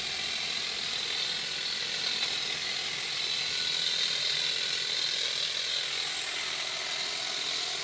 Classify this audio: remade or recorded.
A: recorded